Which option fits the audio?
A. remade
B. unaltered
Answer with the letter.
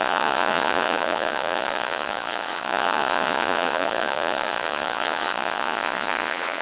A